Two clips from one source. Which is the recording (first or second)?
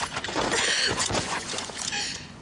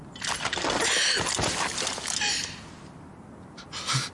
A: second